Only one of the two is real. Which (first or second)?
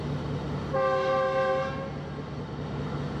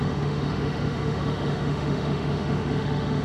first